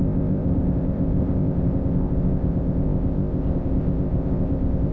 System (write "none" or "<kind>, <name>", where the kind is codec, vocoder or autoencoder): codec, ZipCodec